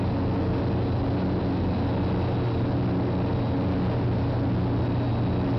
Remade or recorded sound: recorded